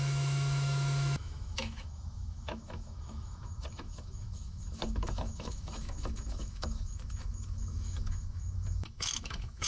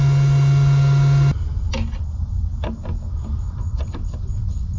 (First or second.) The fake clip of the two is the first